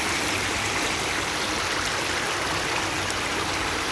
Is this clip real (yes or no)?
yes